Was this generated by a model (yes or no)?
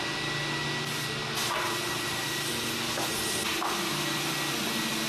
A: no